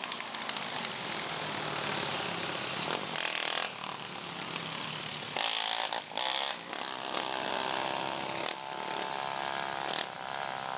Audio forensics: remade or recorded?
recorded